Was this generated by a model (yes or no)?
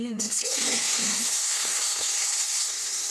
yes